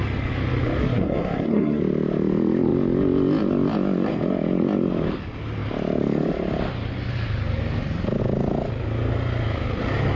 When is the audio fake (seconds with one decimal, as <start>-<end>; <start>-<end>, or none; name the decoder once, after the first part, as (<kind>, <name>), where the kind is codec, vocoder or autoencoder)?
0.8-1.8 (codec, SNAC)